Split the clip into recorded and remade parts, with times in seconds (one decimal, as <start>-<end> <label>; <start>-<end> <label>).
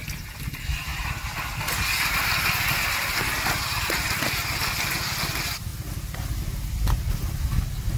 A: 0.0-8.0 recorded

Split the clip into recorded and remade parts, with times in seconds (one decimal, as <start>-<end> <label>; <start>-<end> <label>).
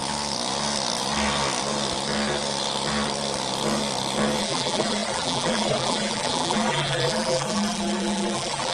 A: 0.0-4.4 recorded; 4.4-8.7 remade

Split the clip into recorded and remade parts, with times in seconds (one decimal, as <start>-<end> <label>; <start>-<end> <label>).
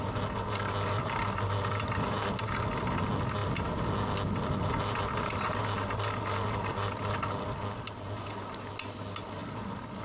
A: 0.0-10.0 recorded